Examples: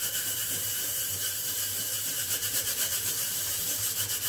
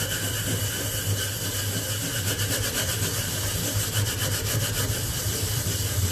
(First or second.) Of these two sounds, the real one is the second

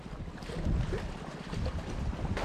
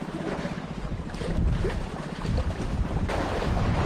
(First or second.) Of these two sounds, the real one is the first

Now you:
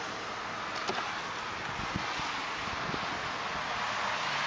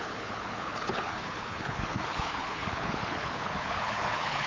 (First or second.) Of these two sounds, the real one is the first